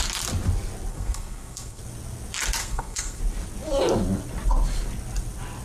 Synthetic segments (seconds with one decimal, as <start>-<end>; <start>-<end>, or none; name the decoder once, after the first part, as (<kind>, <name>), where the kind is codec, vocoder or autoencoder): 0.9-1.8 (codec, SNAC); 2.6-3.2